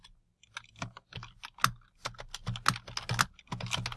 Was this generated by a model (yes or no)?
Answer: no